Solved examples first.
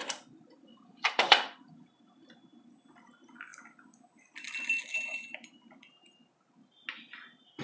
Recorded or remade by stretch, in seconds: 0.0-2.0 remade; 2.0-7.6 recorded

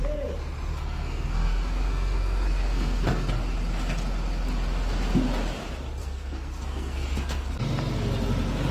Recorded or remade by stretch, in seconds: 0.0-0.7 recorded; 0.7-3.3 remade; 3.3-6.0 recorded; 6.0-7.6 remade; 7.6-8.7 recorded

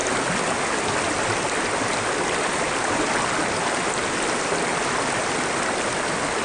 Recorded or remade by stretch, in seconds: 0.0-6.4 recorded